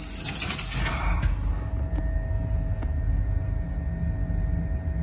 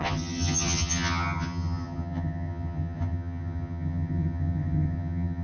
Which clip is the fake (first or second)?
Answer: second